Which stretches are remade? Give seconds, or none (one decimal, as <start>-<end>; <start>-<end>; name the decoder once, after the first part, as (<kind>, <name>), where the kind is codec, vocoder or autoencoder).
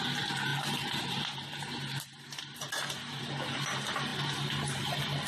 none